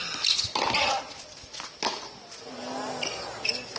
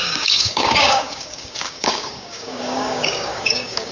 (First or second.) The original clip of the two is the first